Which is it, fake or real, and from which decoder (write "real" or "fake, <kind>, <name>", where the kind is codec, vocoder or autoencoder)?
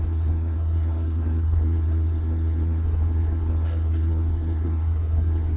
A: fake, codec, SNAC